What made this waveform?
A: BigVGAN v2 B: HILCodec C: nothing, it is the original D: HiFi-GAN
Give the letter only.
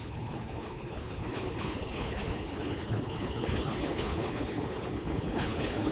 B